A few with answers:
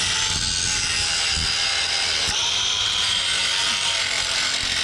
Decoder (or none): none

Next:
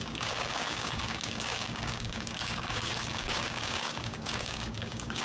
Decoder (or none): codec, DAC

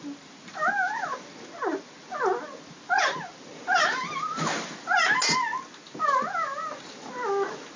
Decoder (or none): none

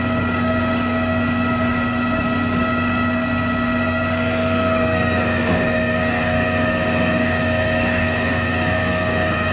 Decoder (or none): codec, DAC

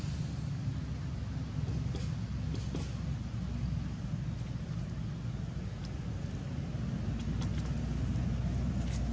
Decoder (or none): none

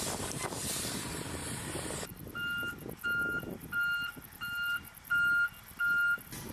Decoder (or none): none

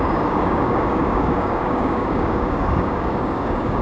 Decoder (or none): codec, DAC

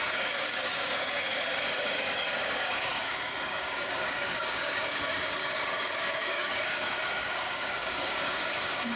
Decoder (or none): codec, DAC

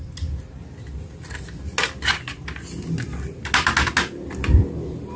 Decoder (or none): none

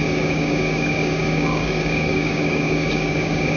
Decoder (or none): codec, DAC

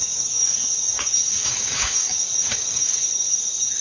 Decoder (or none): codec, DAC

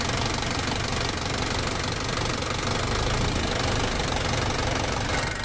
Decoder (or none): none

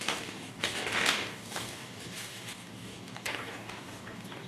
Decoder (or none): codec, DAC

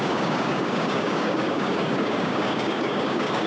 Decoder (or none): codec, DAC